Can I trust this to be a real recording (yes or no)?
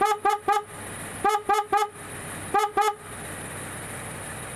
yes